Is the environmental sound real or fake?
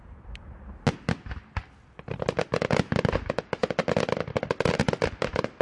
real